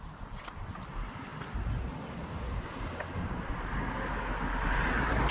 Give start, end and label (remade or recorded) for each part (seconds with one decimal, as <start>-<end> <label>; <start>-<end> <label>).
0.0-5.3 recorded